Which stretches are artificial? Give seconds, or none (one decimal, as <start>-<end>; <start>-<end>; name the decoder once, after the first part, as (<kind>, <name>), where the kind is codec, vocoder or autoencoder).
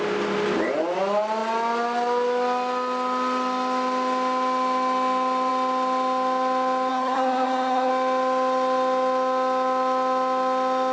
6.9-7.9 (codec, SNAC)